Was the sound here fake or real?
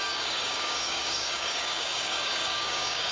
fake